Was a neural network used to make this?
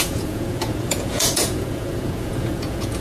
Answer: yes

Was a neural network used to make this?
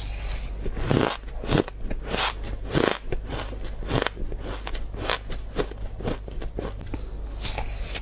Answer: no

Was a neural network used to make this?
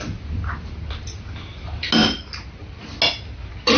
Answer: no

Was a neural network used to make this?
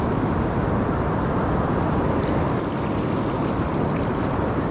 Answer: no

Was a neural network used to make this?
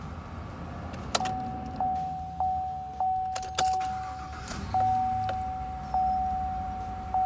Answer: no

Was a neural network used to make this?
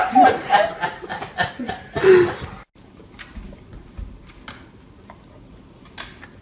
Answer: no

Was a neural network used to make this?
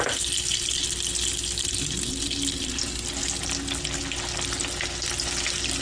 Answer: no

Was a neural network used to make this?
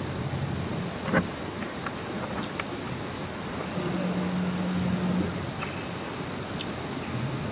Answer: no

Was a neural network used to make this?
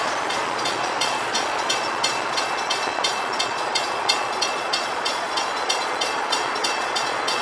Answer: yes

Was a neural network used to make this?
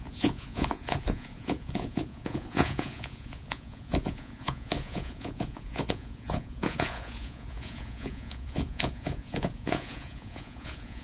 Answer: yes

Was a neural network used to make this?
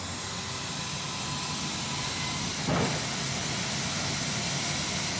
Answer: no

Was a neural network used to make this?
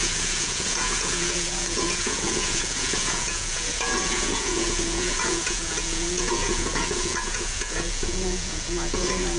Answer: yes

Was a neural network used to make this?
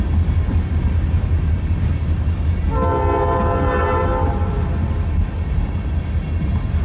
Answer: no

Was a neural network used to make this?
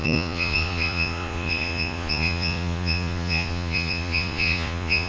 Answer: yes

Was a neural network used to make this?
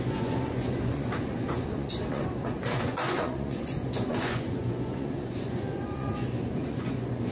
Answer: yes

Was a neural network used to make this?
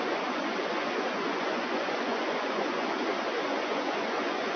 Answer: yes